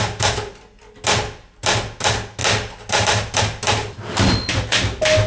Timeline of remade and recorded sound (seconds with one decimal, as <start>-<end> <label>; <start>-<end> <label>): 0.0-5.3 recorded